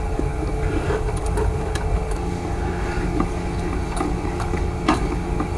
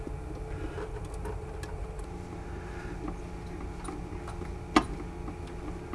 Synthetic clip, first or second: first